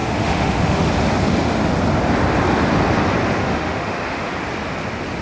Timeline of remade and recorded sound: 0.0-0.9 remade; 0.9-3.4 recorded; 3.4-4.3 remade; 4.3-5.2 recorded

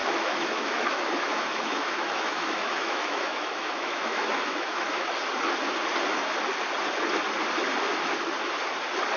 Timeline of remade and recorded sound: 0.0-5.1 remade; 5.1-9.2 recorded